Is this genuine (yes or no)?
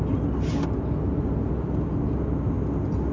yes